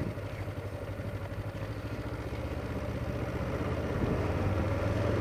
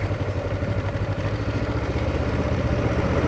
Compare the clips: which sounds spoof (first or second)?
second